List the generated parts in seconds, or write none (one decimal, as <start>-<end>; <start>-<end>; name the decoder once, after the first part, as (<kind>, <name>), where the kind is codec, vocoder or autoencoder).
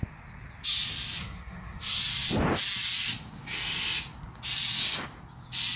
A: 1.2-2.0 (codec, SNAC)